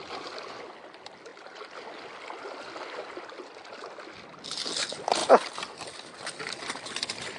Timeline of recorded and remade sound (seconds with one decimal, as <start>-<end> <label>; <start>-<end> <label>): 0.0-7.4 recorded